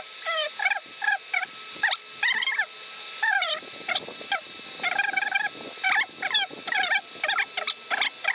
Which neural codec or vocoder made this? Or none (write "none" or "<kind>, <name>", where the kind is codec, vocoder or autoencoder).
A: none